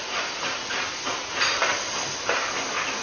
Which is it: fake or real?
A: real